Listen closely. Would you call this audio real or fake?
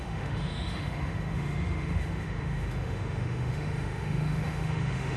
fake